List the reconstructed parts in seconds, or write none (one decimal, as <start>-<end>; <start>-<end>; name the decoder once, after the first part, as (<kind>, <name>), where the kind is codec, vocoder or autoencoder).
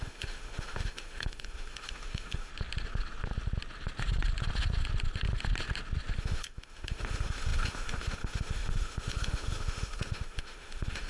0.0-2.5 (autoencoder, DAC-VAE); 6.2-11.1